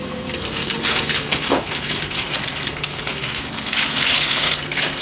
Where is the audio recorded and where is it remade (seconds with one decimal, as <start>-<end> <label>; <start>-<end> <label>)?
0.0-5.0 remade